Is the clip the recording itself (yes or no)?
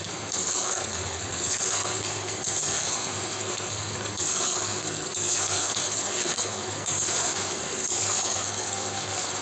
no